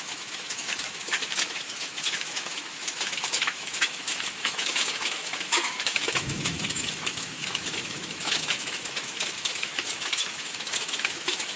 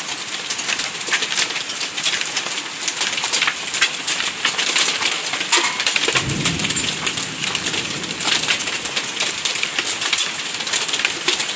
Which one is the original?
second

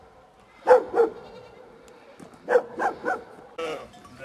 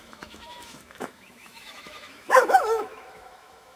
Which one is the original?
first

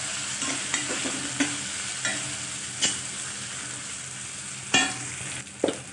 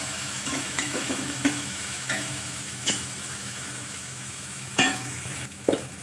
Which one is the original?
first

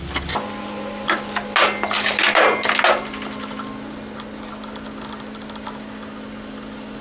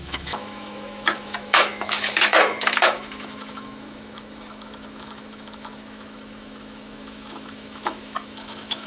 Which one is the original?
first